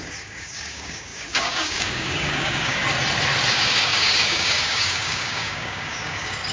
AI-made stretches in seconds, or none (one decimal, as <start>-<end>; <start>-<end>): 0.0-2.8; 3.5-6.5